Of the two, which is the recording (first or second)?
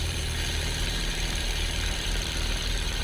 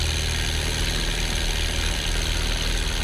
second